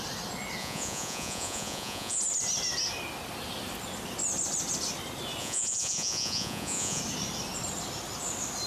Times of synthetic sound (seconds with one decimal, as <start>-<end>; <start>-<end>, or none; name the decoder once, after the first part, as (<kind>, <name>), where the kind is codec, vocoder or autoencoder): 0.6-2.2 (vocoder, Vocos); 5.4-7.0